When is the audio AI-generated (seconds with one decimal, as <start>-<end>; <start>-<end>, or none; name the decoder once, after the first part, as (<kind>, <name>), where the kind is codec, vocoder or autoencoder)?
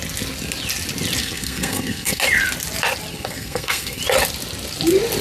1.2-2.2 (codec, SNAC); 3.1-4.0